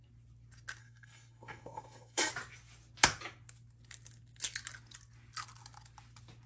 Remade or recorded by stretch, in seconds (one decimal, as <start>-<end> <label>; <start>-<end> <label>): 0.0-0.8 recorded; 0.8-2.3 remade; 2.3-6.5 recorded